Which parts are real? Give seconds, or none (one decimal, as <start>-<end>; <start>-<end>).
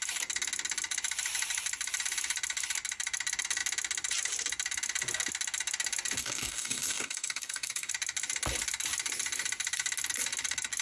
0.0-6.2; 7.9-10.8